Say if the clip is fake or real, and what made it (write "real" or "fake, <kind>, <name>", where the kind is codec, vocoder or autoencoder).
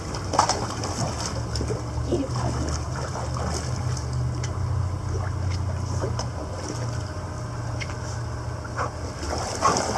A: real